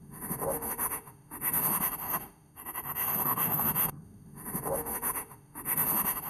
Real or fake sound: fake